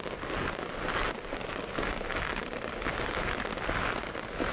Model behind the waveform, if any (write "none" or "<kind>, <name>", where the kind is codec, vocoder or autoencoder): none